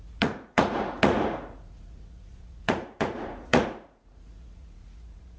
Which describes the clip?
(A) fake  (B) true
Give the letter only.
A